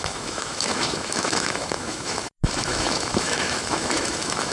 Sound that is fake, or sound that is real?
fake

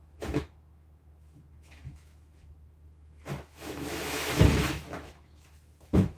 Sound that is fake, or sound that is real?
fake